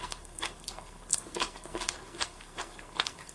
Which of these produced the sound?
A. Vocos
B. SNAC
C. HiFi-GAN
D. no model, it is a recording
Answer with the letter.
B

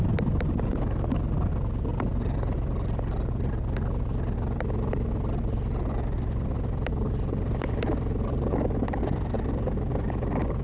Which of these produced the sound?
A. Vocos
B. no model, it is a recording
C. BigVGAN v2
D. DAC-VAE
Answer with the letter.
B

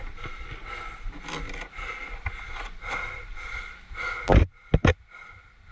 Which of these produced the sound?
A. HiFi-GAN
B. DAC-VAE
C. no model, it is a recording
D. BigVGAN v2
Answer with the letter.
C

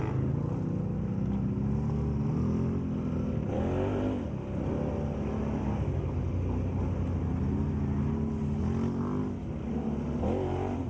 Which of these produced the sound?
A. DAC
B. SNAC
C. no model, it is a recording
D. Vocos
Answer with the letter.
C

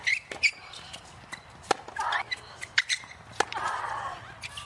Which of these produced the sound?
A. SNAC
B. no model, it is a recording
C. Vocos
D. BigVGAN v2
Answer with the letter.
B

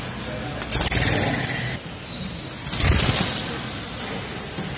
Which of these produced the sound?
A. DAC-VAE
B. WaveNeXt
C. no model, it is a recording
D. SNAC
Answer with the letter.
C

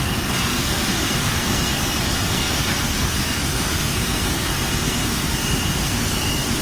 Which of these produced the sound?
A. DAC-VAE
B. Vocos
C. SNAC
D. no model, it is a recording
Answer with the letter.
C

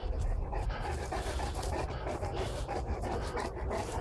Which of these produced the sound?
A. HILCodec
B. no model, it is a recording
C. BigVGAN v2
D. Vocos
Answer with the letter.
B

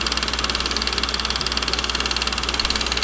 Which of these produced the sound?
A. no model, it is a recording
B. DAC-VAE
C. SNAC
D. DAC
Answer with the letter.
A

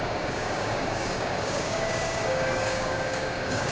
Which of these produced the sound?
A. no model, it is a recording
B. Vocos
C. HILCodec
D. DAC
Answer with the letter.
D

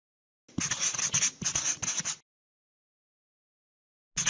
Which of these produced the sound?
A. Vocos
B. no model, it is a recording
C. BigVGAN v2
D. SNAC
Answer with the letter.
B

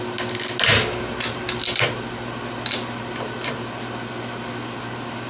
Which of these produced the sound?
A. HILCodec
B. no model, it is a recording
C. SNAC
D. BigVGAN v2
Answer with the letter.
B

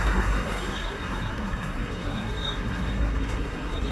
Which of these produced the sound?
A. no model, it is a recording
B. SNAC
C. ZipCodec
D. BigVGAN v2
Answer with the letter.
B